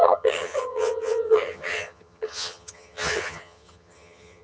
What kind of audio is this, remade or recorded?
remade